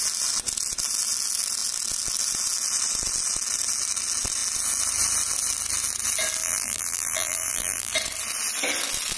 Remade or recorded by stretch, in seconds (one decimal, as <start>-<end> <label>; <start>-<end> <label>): 0.0-6.4 recorded; 6.4-7.9 remade; 7.9-9.2 recorded